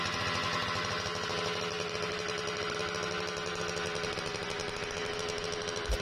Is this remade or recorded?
recorded